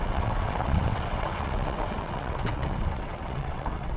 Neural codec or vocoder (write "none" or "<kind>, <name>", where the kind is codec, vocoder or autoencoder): vocoder, WaveNeXt